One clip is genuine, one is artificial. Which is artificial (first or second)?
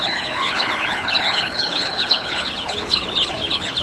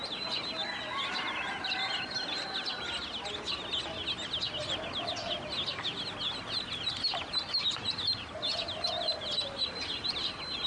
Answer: first